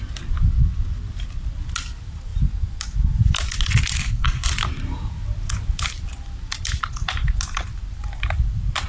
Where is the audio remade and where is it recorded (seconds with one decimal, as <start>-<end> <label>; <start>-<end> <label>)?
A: 0.0-3.9 recorded; 3.9-4.5 remade; 4.5-8.9 recorded